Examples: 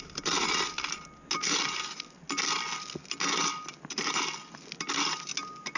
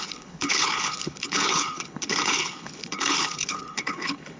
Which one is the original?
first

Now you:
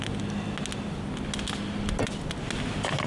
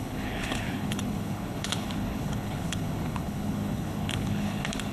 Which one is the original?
first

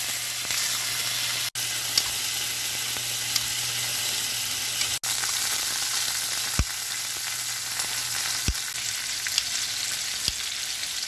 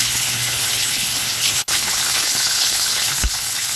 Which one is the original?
first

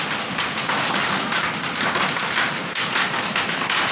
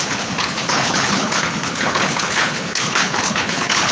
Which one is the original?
first